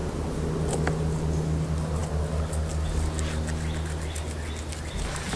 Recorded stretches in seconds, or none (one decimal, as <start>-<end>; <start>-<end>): 0.0-5.4